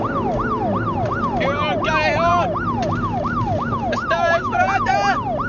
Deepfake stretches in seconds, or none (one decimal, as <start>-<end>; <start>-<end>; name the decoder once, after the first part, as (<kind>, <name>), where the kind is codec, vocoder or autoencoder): none